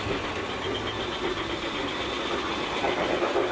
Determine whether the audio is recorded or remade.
recorded